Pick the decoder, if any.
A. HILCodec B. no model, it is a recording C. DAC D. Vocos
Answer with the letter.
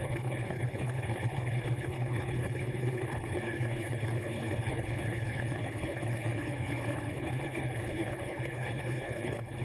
A